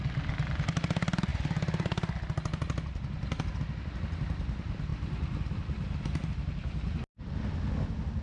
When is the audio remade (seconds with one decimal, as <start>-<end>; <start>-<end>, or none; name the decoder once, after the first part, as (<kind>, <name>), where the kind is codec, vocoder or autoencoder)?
none